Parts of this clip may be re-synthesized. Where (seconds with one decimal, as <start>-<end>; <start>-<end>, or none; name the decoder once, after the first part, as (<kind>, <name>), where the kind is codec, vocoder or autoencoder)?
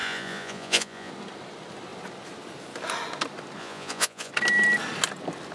0.0-1.1 (vocoder, Vocos); 3.6-4.3